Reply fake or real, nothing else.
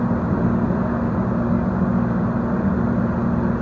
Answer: real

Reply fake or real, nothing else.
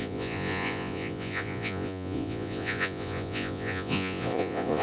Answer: fake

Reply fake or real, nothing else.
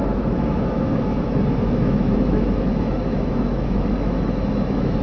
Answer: fake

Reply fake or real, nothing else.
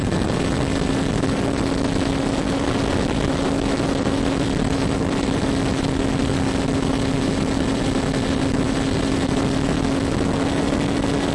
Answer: real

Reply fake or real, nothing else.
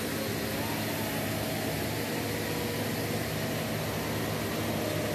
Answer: real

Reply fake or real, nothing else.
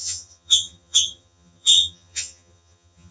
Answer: fake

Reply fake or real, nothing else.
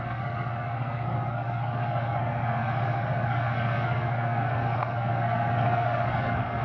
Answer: fake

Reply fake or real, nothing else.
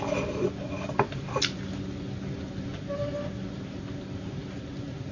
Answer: real